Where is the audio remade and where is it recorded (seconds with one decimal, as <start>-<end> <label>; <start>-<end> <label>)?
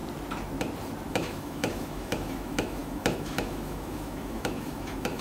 0.0-1.1 recorded; 1.1-5.2 remade